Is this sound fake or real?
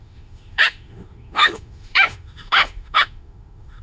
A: fake